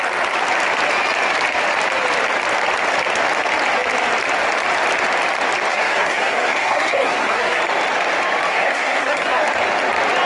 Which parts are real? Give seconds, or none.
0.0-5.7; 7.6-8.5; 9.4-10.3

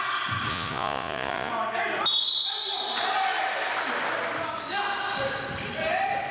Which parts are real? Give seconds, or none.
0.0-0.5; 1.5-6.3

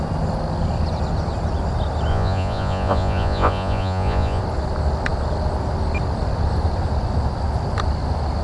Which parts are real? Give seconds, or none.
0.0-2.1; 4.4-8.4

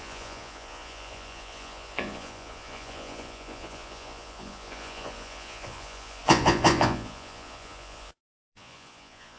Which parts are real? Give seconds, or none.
none

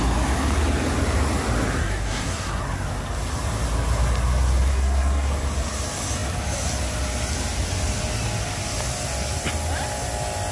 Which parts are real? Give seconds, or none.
0.0-1.8; 2.6-4.7; 5.3-10.5